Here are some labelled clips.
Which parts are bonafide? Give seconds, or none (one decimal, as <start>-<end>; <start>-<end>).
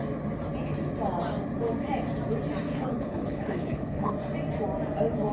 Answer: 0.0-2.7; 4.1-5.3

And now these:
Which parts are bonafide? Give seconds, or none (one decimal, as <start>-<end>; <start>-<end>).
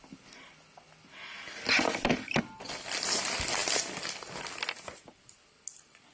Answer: 0.0-6.1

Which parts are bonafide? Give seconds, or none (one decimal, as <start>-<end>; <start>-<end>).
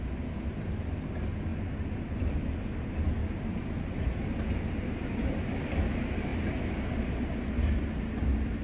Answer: 0.0-3.2; 4.3-6.3; 7.4-8.6